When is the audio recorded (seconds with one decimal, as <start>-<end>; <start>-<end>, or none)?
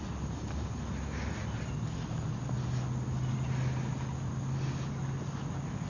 0.0-5.9